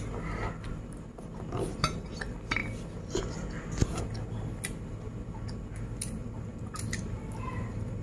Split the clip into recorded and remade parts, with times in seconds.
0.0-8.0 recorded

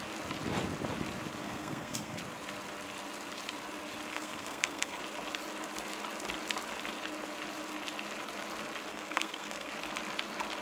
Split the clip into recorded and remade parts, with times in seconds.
0.0-1.4 recorded; 1.4-2.2 remade; 2.2-4.1 recorded; 4.1-5.0 remade; 5.0-8.9 recorded; 8.9-9.7 remade; 9.7-10.6 recorded

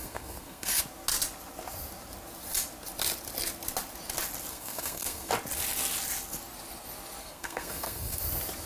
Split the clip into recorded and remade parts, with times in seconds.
0.0-0.8 remade; 0.8-4.5 recorded; 4.5-5.3 remade; 5.3-7.2 recorded; 7.2-8.2 remade; 8.2-8.7 recorded